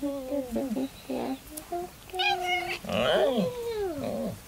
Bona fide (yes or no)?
yes